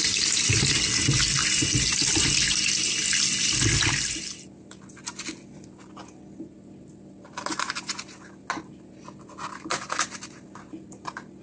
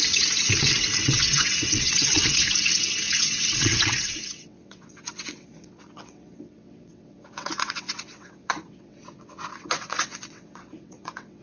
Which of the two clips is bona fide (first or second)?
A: first